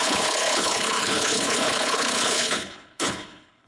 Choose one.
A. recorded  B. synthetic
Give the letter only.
B